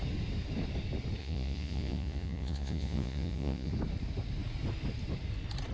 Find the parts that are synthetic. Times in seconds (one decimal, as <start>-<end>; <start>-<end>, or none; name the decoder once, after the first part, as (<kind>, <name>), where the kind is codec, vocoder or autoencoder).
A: 1.2-3.7 (vocoder, Vocos)